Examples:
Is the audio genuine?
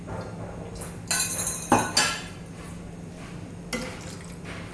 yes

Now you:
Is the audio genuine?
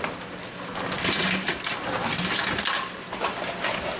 yes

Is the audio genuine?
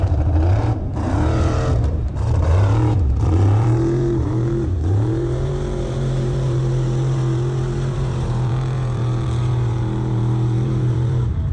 no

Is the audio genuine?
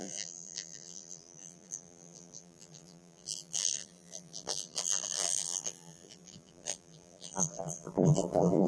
no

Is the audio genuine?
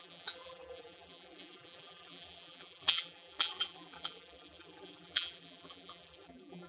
no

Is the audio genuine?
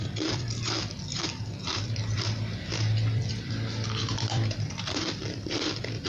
no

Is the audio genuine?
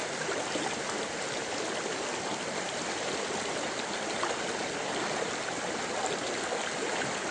yes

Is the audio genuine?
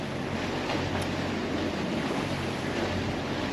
no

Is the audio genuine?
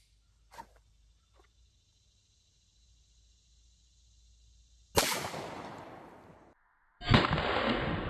yes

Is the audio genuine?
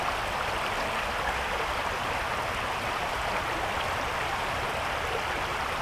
no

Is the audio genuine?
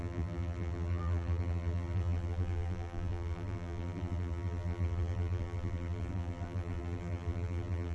no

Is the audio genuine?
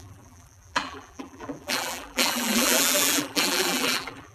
no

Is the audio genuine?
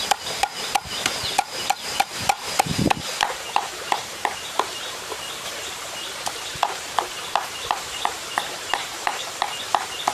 no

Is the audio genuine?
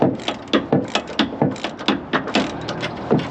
yes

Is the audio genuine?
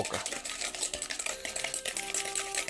yes